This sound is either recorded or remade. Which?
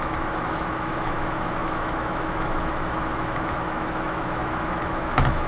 remade